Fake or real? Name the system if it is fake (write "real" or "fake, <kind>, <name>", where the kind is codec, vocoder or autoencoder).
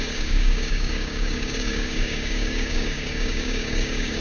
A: fake, codec, DAC